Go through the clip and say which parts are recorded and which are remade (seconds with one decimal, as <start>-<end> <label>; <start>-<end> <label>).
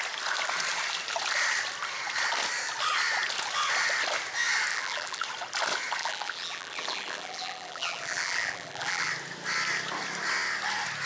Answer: 0.0-4.7 recorded; 4.7-5.2 remade; 5.2-6.0 recorded; 6.0-9.1 remade; 9.1-11.1 recorded